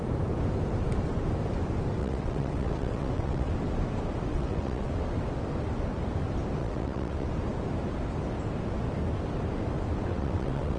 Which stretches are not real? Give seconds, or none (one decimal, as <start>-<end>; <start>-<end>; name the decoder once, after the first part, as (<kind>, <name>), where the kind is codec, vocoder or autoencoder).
2.0-3.5 (vocoder, WaveNeXt); 4.3-4.9; 6.6-7.3; 10.1-10.8